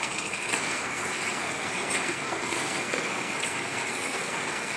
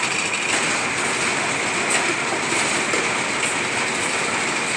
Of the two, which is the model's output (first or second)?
first